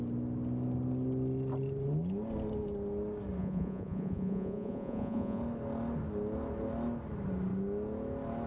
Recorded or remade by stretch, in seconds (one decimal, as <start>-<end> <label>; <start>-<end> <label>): 0.0-3.4 recorded; 3.4-5.4 remade; 5.4-8.5 recorded